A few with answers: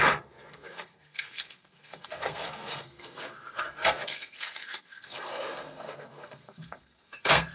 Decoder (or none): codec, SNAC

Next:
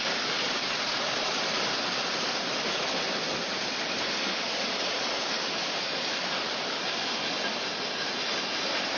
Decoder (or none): none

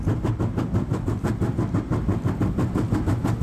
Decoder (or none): none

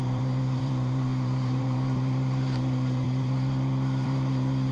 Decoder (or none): vocoder, BigVGAN v2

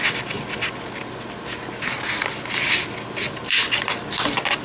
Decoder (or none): none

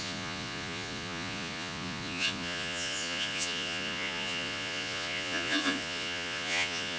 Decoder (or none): vocoder, Vocos